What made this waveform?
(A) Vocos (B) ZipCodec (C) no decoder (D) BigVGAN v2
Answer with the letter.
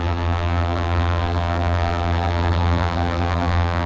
D